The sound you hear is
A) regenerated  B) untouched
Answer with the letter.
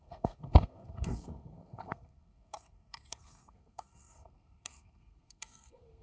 A